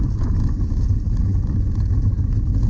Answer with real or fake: real